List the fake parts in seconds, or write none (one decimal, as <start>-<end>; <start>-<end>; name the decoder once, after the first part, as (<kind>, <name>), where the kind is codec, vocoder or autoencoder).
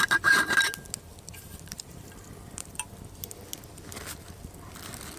1.1-2.9 (vocoder, BigVGAN v2)